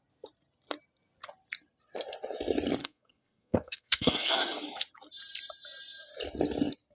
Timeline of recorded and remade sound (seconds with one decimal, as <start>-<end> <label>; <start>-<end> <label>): 0.0-2.8 recorded; 2.8-4.4 remade; 4.4-6.9 recorded